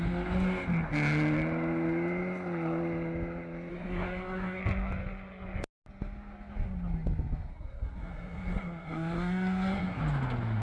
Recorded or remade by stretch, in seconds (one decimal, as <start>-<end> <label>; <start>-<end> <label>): 0.0-3.7 recorded; 3.7-4.6 remade; 4.6-7.5 recorded; 7.5-10.0 remade; 10.0-10.6 recorded